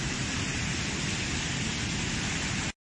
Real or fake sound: real